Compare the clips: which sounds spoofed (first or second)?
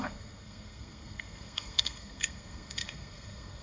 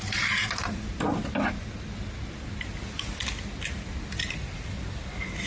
first